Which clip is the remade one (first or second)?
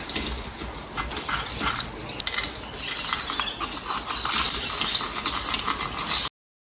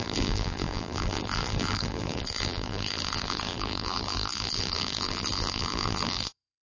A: second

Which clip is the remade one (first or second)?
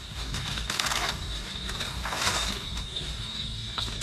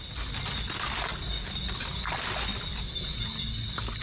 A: first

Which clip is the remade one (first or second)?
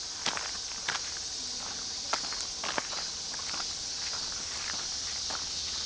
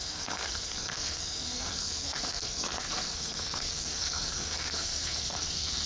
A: second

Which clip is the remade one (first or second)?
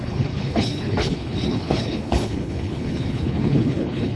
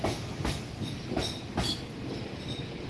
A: first